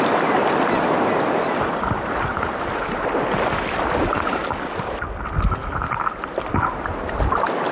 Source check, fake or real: real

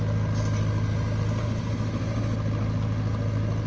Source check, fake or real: real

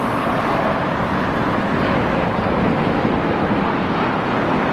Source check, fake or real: real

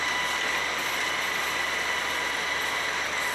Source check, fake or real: real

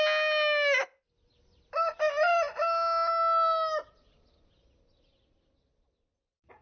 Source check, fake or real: real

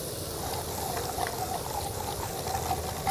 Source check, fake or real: real